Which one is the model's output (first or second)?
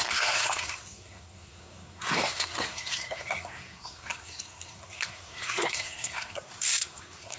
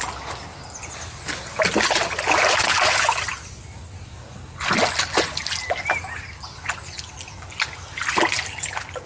first